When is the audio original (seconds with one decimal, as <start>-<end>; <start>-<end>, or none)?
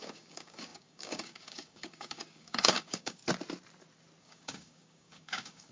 3.2-4.2